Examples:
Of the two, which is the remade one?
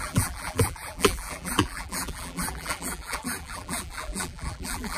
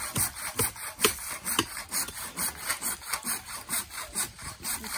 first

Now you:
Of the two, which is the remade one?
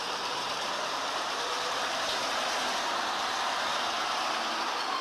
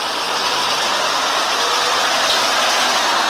first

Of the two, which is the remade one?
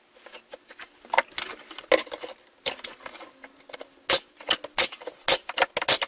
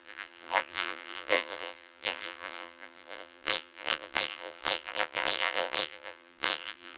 second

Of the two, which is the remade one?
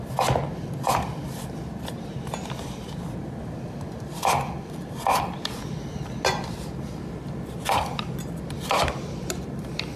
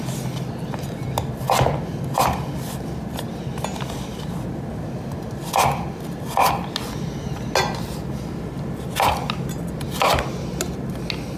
first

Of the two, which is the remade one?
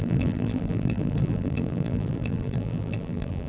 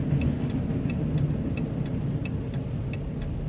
first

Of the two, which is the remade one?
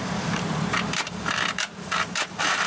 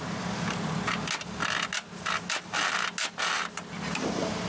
first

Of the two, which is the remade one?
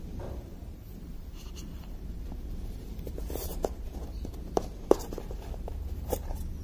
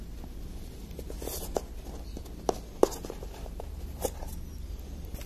first